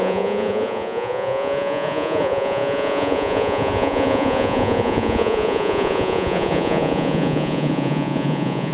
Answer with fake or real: fake